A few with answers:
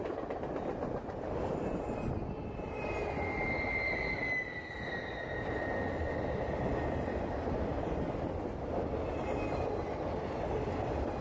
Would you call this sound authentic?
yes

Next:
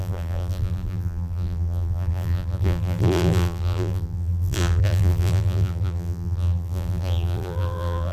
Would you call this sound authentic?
no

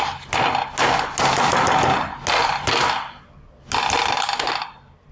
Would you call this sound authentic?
yes